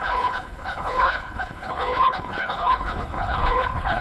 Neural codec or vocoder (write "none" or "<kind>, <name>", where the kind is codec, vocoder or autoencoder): codec, HILCodec